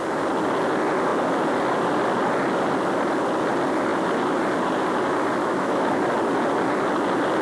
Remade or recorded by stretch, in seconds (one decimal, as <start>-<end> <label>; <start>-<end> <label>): 0.0-5.4 recorded; 5.4-6.0 remade; 6.0-7.4 recorded